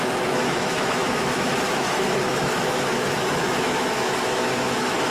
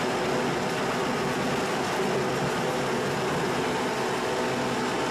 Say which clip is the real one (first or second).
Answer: second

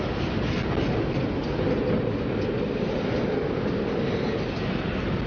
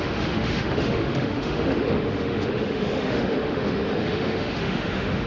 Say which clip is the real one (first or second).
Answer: first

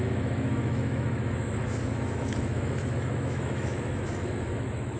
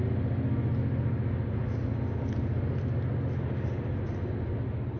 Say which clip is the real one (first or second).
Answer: second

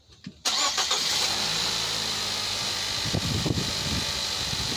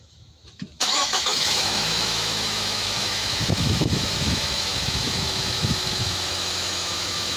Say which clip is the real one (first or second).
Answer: first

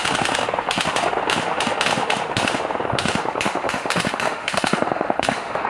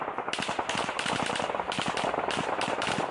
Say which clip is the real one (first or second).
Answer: second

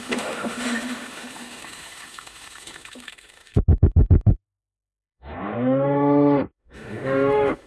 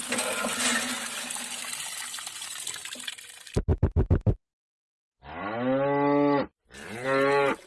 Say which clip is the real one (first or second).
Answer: second